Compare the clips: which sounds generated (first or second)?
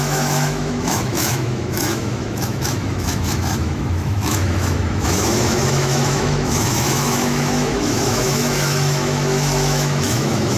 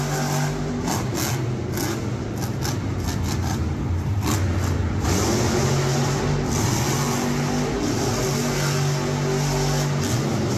first